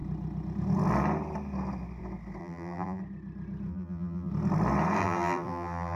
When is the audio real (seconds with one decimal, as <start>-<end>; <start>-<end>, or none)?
0.0-2.4; 3.0-3.7; 4.3-5.0